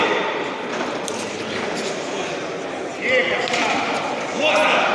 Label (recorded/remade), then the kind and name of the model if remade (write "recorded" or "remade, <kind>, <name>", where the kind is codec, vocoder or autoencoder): recorded